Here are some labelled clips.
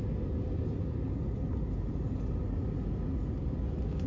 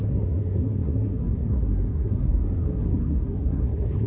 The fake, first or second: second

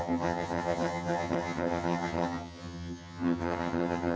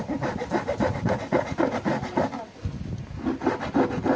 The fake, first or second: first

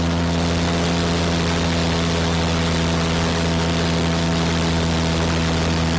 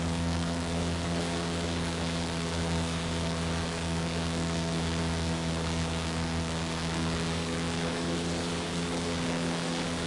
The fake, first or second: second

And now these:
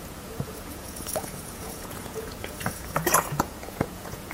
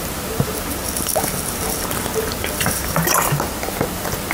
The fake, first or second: first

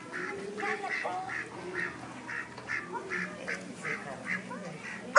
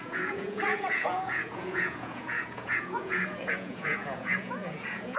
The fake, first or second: second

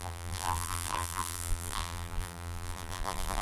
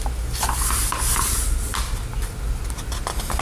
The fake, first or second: first